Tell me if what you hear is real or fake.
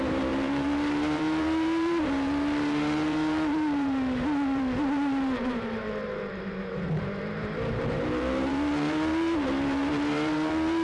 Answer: fake